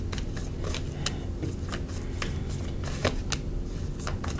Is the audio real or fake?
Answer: real